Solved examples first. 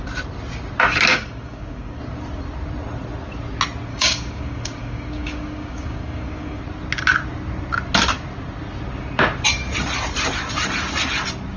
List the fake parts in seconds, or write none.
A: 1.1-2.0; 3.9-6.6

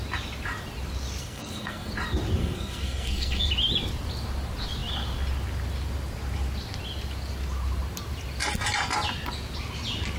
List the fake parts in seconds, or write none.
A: 1.2-1.9; 2.4-3.5